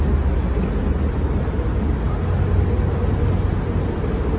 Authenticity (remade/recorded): recorded